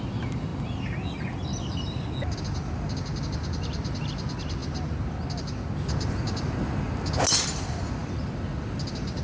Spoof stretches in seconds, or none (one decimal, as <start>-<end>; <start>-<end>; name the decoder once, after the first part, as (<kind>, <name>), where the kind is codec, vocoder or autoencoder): none